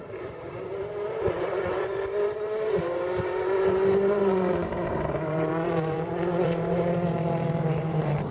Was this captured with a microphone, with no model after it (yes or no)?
no